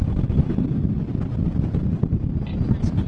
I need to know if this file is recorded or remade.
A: recorded